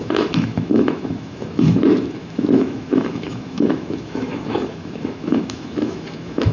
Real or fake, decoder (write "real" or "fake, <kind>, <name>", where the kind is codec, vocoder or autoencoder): fake, autoencoder, DAC-VAE